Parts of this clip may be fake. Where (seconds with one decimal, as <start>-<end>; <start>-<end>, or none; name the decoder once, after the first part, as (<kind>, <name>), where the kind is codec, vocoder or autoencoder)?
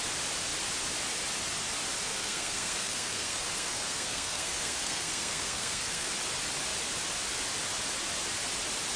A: 2.1-6.1 (codec, SNAC)